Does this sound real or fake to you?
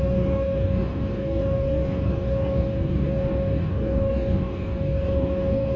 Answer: fake